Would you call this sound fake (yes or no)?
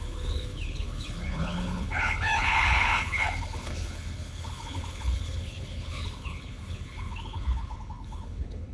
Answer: yes